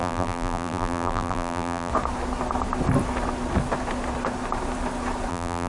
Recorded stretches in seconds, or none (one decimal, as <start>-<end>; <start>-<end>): 1.9-5.3

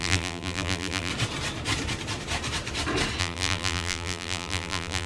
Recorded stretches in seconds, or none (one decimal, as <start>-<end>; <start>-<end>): 1.1-3.2

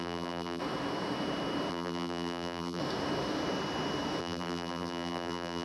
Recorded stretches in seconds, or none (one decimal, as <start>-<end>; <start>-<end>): 0.6-1.7; 2.8-4.2

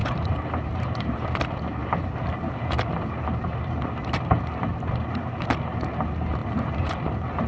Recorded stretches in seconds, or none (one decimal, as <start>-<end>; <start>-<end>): 1.4-1.8; 2.7-6.4; 6.9-7.5

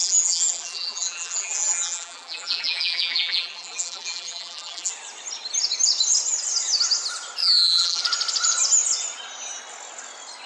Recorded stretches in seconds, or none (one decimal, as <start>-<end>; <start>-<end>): 4.9-7.4; 8.0-10.5

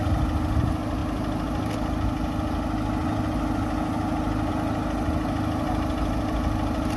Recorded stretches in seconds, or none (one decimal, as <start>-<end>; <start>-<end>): 0.0-7.0

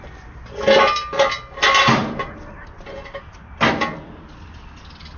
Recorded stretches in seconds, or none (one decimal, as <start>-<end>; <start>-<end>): 0.0-5.2

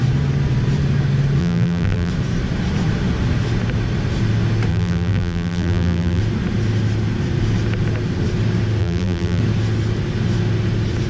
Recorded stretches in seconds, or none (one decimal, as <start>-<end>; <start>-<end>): 0.0-1.4; 2.1-4.7; 6.2-8.8; 9.4-11.1